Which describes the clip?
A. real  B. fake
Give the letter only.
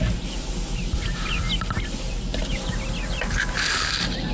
A